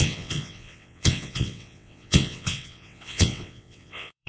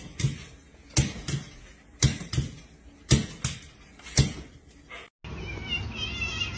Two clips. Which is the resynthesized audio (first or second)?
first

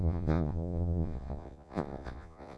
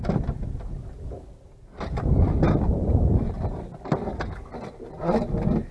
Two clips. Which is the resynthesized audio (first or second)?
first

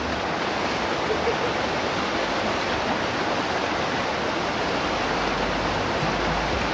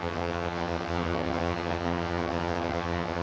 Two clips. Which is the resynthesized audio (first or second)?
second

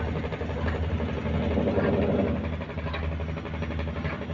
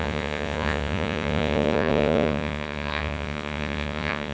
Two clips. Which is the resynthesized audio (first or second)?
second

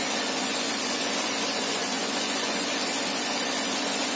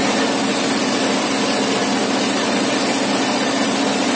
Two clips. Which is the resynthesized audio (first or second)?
first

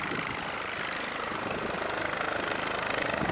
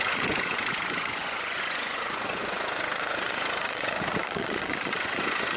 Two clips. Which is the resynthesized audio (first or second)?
second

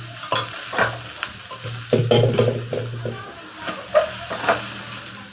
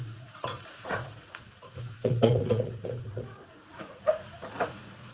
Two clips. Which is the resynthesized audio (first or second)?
second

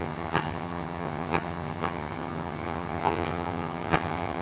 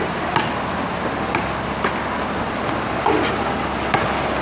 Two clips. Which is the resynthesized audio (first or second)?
first